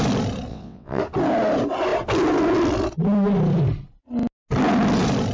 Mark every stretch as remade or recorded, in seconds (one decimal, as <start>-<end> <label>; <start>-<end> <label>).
0.0-0.5 recorded; 0.5-1.0 remade; 1.0-5.3 recorded